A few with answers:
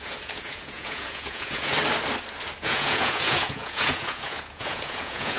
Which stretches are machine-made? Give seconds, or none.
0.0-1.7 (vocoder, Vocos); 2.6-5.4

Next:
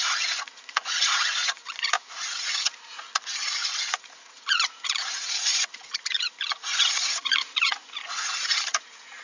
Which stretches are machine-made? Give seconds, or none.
0.0-9.2 (vocoder, Vocos)